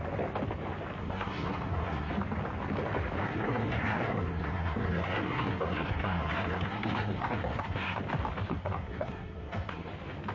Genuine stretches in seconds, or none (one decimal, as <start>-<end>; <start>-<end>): 0.0-1.0; 2.1-3.2; 8.0-8.5; 9.9-10.3